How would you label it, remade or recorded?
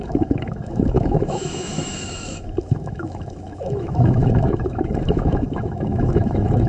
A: remade